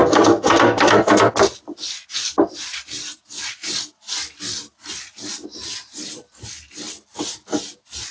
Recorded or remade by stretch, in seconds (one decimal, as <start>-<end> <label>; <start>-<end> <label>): 0.0-1.3 remade; 1.3-8.1 recorded